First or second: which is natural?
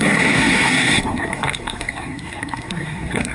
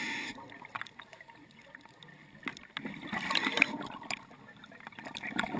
second